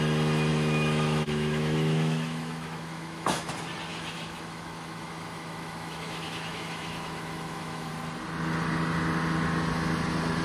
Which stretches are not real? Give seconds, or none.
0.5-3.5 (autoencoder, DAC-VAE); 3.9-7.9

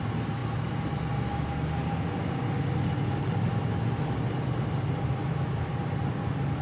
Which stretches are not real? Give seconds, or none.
5.2-5.7 (autoencoder, DAC-VAE)

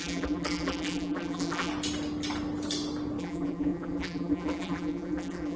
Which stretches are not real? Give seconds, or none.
0.0-1.7 (vocoder, BigVGAN v2); 3.2-5.6

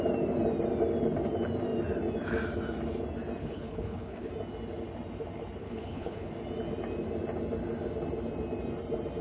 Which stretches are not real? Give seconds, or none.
3.4-4.3 (codec, HILCodec); 5.6-6.3

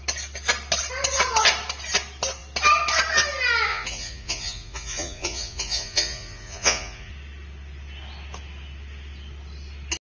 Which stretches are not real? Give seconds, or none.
3.7-7.1 (vocoder, Vocos)

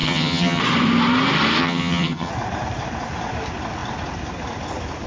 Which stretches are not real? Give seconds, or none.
0.0-0.6 (vocoder, HiFi-GAN); 1.6-2.3

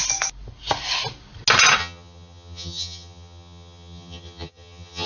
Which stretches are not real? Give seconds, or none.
1.8-5.1 (vocoder, HiFi-GAN)